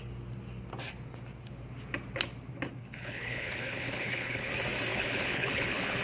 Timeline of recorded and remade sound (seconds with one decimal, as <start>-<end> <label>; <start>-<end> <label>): 0.0-2.8 recorded; 2.8-4.5 remade; 4.5-4.9 recorded; 4.9-6.0 remade